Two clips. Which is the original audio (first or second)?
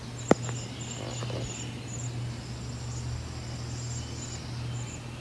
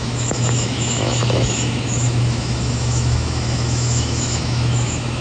first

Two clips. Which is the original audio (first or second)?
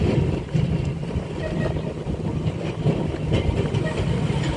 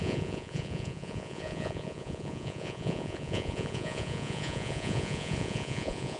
first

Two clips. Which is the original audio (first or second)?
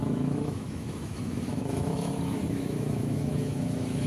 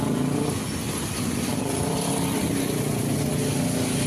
second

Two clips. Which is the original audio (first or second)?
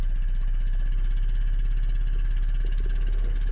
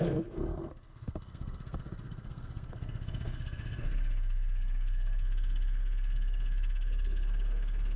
first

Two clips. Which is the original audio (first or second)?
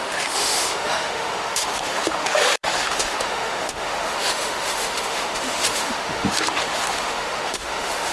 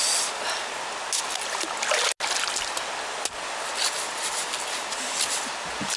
second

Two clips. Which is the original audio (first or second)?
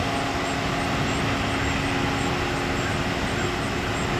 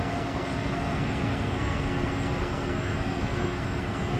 first